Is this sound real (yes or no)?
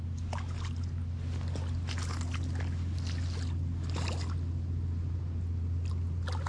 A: yes